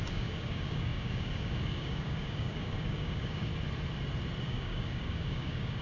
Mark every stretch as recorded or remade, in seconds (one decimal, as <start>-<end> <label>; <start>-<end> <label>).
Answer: 0.0-3.5 remade; 3.5-4.4 recorded; 4.4-5.8 remade